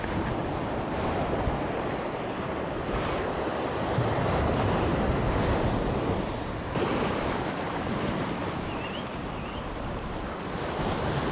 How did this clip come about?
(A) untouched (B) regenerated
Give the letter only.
A